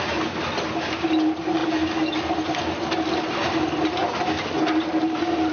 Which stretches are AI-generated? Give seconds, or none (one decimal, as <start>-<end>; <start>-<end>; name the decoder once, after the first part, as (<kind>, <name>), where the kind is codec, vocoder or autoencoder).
none